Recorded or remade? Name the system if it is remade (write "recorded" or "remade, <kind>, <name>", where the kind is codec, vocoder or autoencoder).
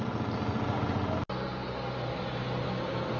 recorded